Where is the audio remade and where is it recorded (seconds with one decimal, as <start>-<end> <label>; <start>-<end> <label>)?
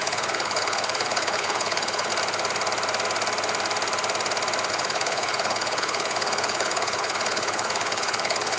0.0-2.1 remade; 2.1-4.7 recorded; 4.7-8.6 remade